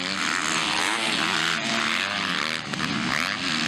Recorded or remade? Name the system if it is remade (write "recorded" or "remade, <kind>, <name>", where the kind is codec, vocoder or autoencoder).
recorded